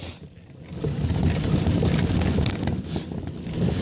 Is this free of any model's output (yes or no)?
yes